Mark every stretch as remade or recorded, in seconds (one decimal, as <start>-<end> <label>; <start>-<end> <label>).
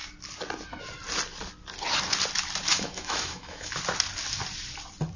0.0-2.7 recorded; 2.7-3.7 remade; 3.7-5.2 recorded